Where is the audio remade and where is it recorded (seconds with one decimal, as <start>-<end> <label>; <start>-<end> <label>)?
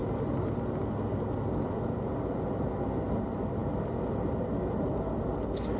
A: 0.0-5.8 recorded